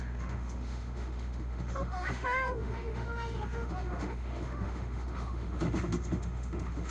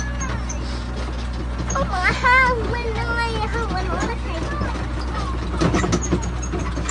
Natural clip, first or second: second